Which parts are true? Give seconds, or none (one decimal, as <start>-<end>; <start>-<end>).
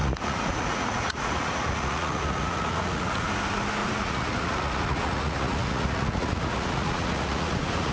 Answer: 3.3-3.8